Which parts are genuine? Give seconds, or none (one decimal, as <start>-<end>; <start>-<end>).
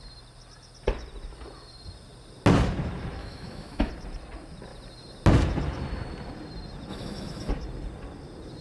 0.0-3.2; 3.9-6.9; 7.5-8.6